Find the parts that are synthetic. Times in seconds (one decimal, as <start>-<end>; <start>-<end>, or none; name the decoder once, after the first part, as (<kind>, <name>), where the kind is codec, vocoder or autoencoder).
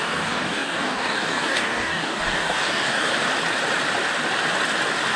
0.0-3.1 (codec, DAC)